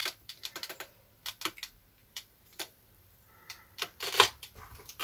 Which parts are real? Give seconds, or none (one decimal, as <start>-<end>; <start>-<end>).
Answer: 0.0-2.0